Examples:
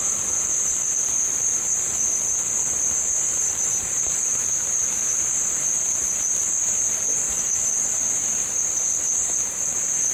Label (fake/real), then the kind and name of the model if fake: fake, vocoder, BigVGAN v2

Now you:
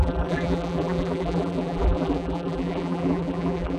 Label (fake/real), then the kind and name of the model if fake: fake, vocoder, BigVGAN v2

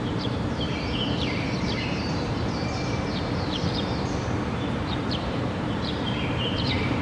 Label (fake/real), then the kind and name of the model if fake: fake, vocoder, BigVGAN v2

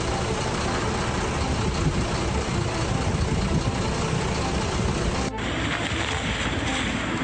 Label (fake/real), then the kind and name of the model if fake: real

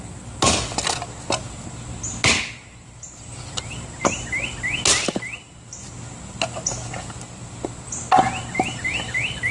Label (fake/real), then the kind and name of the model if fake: real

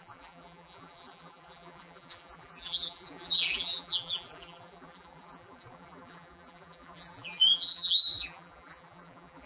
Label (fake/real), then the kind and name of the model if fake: fake, vocoder, BigVGAN v2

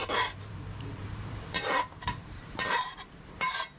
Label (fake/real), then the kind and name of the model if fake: fake, vocoder, BigVGAN v2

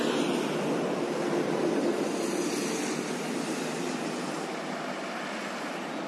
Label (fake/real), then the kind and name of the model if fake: fake, vocoder, BigVGAN v2